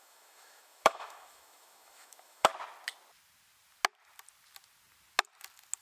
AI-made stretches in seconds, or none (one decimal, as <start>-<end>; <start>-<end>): 0.0-2.5